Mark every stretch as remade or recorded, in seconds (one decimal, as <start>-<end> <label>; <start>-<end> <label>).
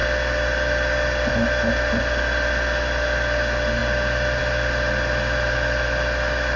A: 0.0-6.6 recorded